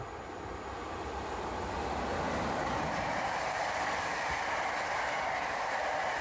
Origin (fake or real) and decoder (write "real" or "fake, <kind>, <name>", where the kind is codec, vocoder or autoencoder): real